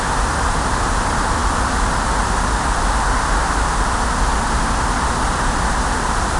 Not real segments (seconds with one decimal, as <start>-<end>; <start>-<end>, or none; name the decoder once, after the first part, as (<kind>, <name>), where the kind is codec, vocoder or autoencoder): none